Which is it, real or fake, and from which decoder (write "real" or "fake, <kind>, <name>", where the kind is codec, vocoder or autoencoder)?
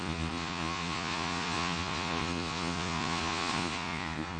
fake, vocoder, Vocos